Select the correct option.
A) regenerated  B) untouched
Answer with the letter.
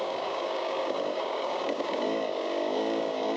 A